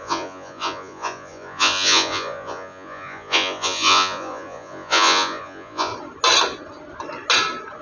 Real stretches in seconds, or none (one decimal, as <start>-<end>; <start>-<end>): 5.9-7.8